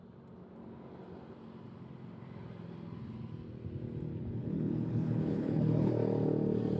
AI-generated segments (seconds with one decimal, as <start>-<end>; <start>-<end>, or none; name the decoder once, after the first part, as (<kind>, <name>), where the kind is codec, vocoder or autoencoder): 4.1-5.9 (codec, HILCodec)